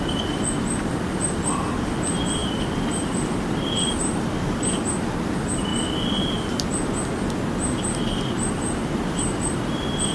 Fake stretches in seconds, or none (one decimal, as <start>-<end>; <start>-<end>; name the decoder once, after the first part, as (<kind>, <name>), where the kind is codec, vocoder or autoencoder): 0.0-5.7 (vocoder, BigVGAN v2); 8.2-10.1